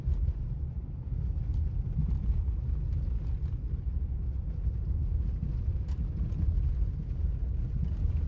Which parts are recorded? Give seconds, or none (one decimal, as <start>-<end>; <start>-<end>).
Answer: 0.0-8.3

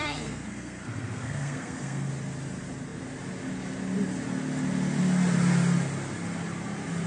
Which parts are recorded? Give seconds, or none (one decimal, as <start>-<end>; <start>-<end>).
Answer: 2.1-7.1

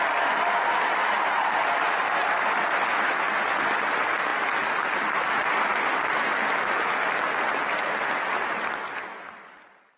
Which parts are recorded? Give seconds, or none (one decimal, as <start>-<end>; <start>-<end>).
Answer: 0.0-10.0